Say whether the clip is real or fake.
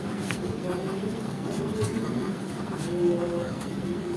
fake